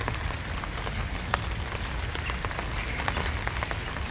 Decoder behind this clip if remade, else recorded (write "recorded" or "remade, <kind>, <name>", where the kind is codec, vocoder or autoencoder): recorded